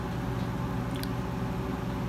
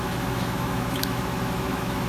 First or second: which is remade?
second